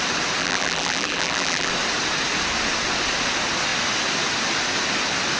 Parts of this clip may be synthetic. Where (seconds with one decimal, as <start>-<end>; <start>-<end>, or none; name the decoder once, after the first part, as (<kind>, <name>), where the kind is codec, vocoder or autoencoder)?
0.4-1.7 (vocoder, BigVGAN v2)